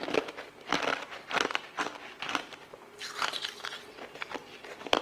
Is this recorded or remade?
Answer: recorded